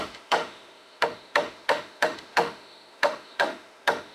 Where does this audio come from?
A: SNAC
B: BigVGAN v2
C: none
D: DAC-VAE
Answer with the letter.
D